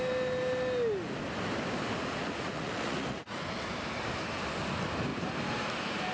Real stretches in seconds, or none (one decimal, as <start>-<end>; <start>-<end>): 0.0-2.2; 3.4-6.1